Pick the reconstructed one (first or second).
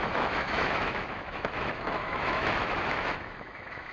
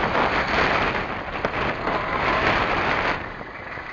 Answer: first